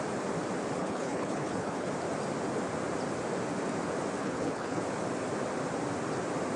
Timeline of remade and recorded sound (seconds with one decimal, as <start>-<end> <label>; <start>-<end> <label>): 0.0-0.8 recorded; 0.8-1.9 remade; 1.9-4.2 recorded; 4.2-4.8 remade; 4.8-6.6 recorded